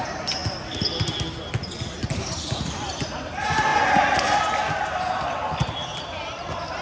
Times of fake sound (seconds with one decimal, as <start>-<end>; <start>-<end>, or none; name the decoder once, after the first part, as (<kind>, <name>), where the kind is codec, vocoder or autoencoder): none